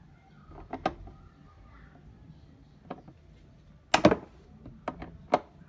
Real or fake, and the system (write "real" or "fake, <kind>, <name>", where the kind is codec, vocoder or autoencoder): real